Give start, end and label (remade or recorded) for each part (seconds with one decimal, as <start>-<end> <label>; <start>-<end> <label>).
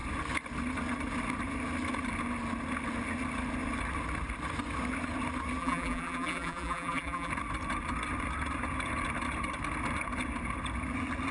0.0-5.6 recorded; 5.6-7.3 remade; 7.3-11.3 recorded